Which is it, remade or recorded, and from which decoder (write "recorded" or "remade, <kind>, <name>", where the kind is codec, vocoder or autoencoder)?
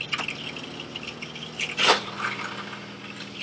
recorded